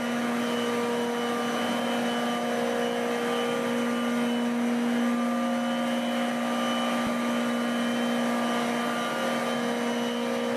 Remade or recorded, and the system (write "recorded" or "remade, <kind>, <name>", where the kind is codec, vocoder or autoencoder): recorded